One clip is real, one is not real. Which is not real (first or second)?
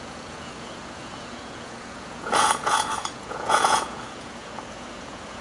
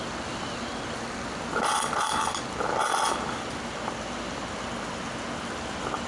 first